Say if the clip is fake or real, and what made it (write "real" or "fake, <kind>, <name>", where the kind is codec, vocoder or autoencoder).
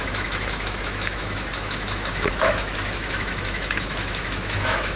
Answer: fake, autoencoder, DAC-VAE